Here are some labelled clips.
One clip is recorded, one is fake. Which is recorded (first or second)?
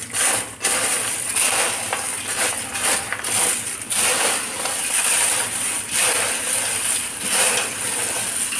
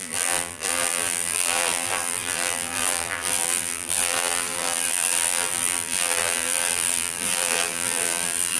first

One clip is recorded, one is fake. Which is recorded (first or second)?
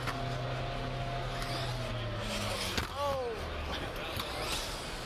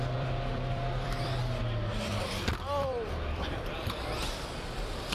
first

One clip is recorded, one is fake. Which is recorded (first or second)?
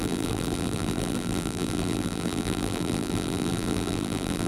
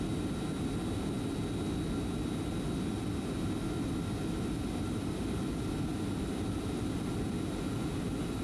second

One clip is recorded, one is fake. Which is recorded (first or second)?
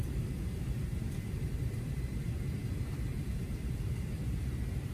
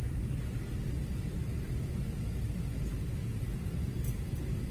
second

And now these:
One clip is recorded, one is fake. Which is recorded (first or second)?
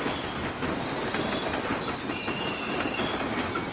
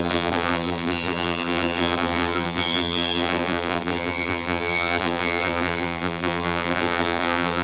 first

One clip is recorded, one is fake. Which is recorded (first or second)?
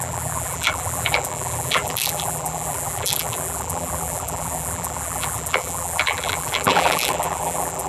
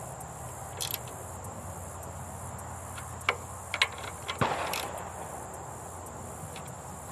second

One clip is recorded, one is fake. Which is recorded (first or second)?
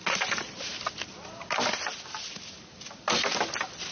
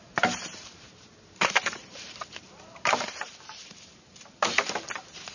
first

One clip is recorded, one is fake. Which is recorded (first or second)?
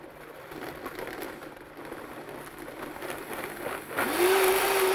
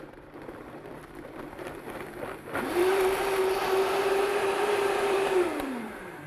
first